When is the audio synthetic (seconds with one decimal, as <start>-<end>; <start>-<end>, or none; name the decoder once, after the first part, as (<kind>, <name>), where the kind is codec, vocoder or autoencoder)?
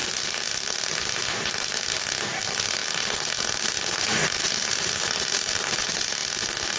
0.0-6.2 (vocoder, BigVGAN v2)